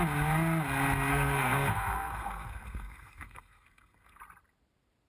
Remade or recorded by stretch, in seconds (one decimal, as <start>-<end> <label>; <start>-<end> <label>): 0.0-1.1 recorded; 1.1-4.2 remade; 4.2-5.1 recorded